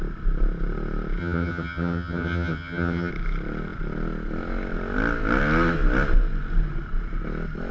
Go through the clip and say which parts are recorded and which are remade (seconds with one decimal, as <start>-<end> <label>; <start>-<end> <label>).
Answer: 0.0-1.2 recorded; 1.2-3.1 remade; 3.1-7.7 recorded